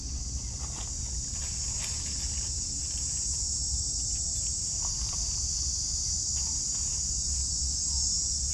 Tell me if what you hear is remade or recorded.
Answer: recorded